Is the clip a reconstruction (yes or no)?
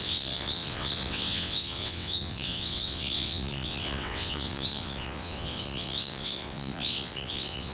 yes